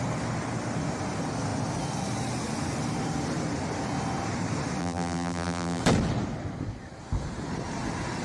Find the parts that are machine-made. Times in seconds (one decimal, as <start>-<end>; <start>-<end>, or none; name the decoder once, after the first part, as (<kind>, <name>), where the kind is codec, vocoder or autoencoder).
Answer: 4.8-5.8 (vocoder, BigVGAN v2)